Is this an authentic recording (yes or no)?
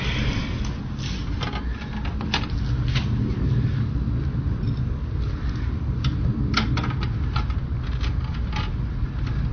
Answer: yes